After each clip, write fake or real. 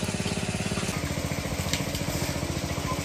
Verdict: real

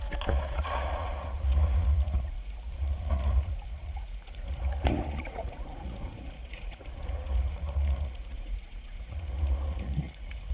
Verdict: fake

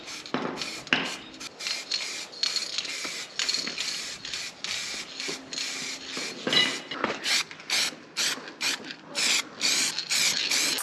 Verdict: real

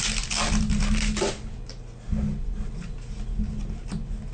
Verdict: real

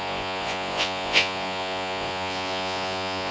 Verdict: fake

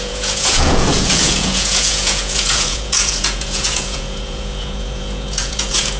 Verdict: fake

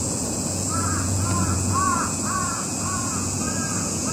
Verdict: fake